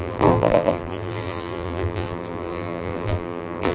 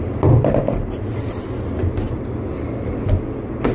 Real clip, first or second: second